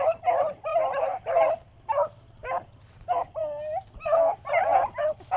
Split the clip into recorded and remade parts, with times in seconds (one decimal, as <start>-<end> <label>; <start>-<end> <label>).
0.0-3.4 remade; 3.4-5.4 recorded